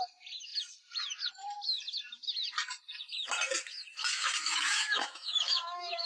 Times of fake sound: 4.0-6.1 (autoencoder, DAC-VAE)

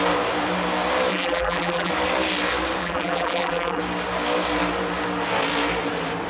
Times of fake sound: 1.1-1.9 (vocoder, BigVGAN v2); 2.8-3.8

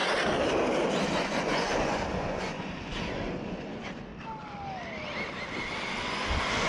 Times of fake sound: 1.1-4.1 (vocoder, Vocos); 6.0-6.7

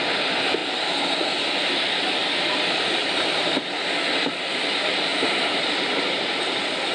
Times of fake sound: 5.1-6.4 (vocoder, BigVGAN v2)